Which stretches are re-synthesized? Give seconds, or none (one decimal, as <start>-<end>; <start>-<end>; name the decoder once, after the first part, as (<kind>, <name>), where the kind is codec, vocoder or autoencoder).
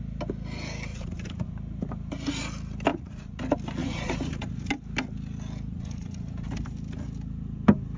0.9-1.5 (vocoder, Vocos); 2.9-3.4; 3.8-4.7; 5.7-6.5